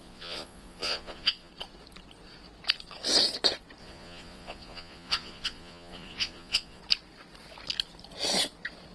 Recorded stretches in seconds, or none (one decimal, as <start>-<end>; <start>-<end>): 1.5-3.8; 6.8-8.9